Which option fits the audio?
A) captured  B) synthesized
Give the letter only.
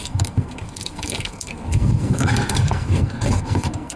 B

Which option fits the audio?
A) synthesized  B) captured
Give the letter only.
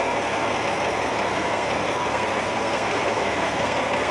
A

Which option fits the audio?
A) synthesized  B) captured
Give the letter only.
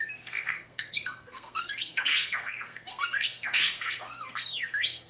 A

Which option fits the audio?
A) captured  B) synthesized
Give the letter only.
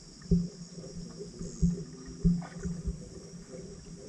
A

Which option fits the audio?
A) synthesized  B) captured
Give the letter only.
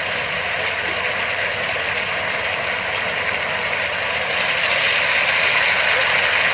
B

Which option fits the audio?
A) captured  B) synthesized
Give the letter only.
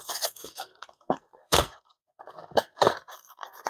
B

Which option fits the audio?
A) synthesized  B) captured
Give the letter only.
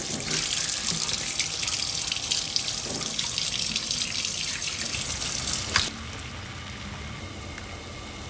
B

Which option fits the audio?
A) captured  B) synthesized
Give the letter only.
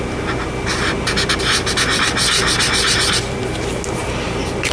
A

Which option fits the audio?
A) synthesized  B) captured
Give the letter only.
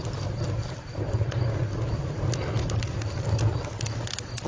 B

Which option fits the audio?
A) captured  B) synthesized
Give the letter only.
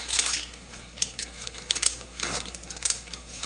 B